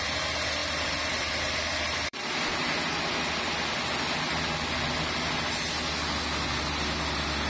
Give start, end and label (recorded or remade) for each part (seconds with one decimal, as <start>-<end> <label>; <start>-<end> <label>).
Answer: 0.0-0.6 recorded; 0.6-2.6 remade; 2.6-7.5 recorded

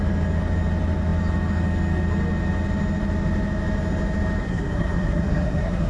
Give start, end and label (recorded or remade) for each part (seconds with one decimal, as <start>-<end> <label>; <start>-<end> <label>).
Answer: 0.0-4.4 recorded; 4.4-5.9 remade

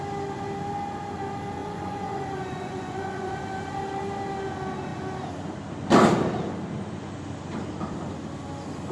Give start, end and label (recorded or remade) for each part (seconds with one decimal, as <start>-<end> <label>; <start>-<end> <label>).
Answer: 0.0-1.6 recorded; 1.6-3.4 remade; 3.4-8.9 recorded